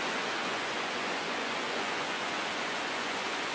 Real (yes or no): no